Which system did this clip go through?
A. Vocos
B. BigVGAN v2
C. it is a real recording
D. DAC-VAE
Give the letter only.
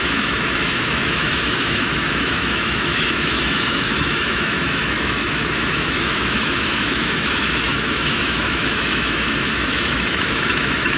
D